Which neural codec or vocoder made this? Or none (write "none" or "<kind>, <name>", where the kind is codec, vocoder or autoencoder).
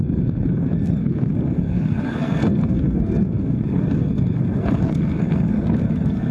codec, SNAC